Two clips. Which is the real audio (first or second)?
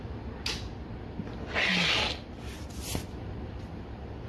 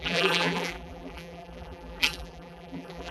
first